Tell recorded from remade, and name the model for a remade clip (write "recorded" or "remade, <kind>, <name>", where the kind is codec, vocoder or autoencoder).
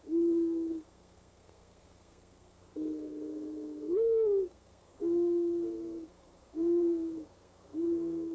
remade, codec, SNAC